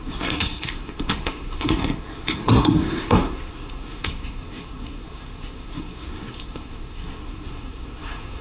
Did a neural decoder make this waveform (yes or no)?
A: yes